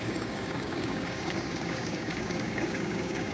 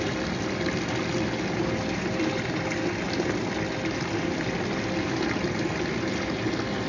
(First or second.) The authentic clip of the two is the second